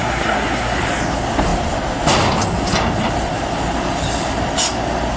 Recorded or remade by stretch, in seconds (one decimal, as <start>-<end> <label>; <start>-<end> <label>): 0.0-0.8 remade; 0.8-5.2 recorded